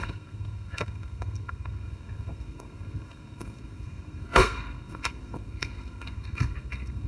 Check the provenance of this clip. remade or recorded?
remade